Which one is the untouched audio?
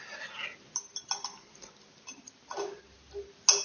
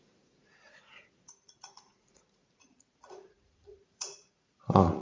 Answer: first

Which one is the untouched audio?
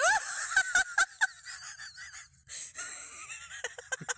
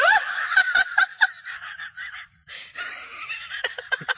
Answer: first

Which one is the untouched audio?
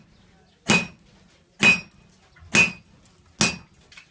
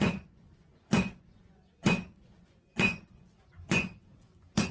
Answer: first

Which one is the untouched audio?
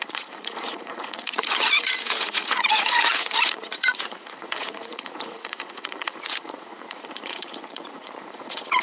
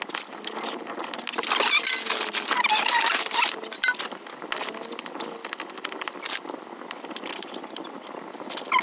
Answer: second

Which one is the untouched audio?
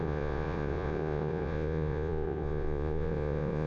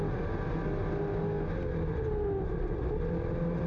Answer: second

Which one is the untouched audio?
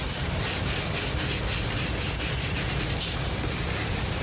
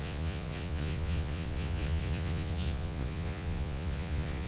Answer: first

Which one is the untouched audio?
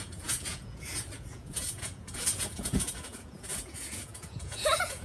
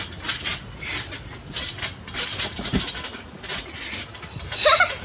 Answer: second